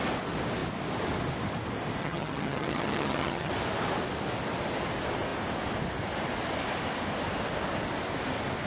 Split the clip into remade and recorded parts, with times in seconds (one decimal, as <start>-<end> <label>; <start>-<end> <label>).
0.0-2.0 recorded; 2.0-3.5 remade; 3.5-8.7 recorded